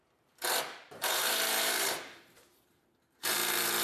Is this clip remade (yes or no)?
yes